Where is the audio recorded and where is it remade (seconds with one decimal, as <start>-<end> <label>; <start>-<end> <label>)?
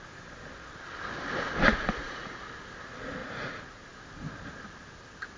0.0-1.7 recorded; 1.7-2.4 remade; 2.4-3.2 recorded; 3.2-3.8 remade; 3.8-5.4 recorded